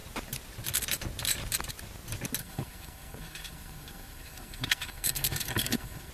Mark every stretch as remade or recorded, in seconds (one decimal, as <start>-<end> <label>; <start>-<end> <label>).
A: 0.0-2.4 recorded; 2.4-6.1 remade